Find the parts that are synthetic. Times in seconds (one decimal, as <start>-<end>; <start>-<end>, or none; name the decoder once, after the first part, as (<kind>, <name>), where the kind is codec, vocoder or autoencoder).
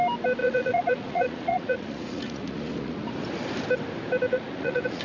0.4-3.1 (vocoder, Vocos); 4.3-5.0